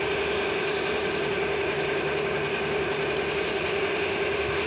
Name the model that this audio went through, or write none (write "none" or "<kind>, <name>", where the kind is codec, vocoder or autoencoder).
none